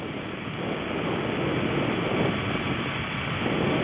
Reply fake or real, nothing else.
real